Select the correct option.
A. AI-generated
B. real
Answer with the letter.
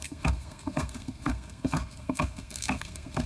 A